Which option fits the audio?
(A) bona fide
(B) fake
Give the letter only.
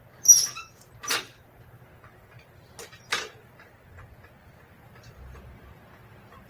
A